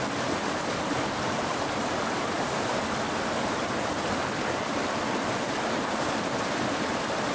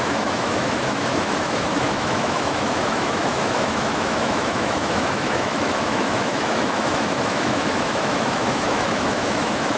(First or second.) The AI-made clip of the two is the second